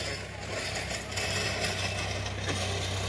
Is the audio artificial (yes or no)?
no